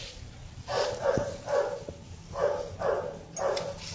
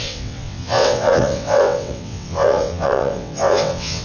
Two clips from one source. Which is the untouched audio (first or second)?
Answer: first